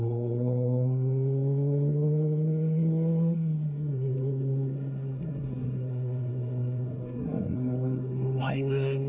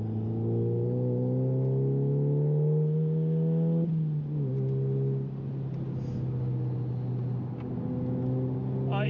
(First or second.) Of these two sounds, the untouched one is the second